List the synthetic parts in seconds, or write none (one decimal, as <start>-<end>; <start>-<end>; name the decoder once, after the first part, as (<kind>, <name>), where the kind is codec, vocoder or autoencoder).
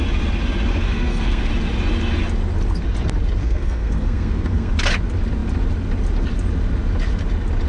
0.7-1.5 (codec, SNAC); 3.4-4.7